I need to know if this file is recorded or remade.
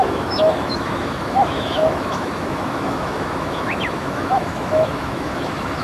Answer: remade